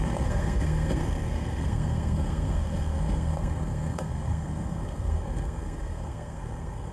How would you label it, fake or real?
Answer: fake